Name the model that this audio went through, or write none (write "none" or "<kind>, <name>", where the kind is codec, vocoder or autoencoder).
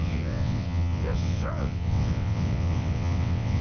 vocoder, WaveNeXt